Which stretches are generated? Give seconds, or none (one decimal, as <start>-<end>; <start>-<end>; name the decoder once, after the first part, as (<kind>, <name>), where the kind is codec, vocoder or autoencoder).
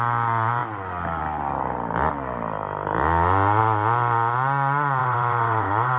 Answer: 5.0-6.0 (vocoder, WaveNeXt)